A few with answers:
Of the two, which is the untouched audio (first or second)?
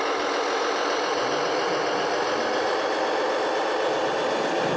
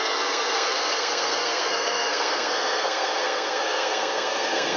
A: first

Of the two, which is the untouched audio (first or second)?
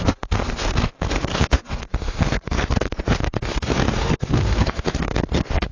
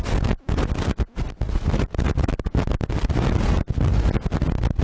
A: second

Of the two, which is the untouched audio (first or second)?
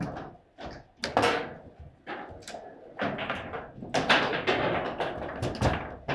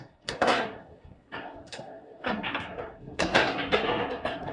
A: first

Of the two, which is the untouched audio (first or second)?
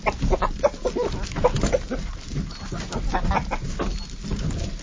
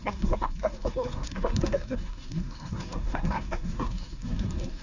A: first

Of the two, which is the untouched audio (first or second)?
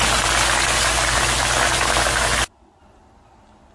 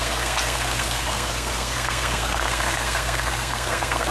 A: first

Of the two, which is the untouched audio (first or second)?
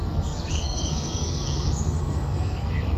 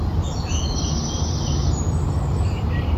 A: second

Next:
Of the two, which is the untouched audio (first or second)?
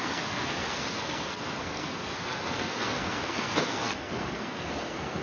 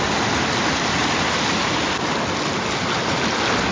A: second